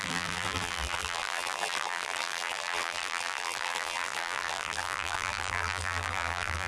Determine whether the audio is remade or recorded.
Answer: remade